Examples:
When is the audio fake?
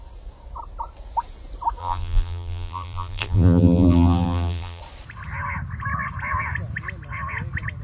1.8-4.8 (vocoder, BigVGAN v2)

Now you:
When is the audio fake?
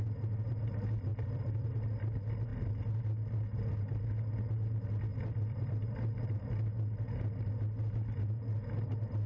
1.1-1.7 (vocoder, BigVGAN v2); 5.1-5.7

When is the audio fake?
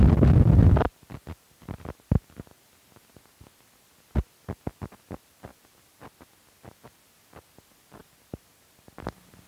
0.0-1.8 (vocoder, BigVGAN v2); 8.0-9.5